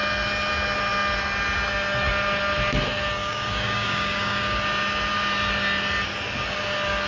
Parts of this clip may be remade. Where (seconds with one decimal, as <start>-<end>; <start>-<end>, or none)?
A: 3.2-4.6